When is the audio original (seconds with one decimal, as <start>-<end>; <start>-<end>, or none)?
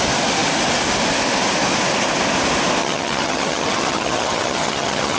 0.0-2.8